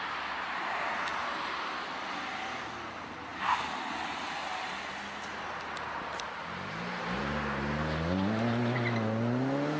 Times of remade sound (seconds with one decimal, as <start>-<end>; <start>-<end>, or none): none